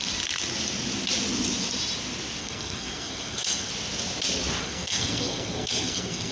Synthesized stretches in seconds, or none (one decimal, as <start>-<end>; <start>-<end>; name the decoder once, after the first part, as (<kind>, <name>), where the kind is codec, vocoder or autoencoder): 2.4-3.7 (codec, SNAC); 4.6-6.3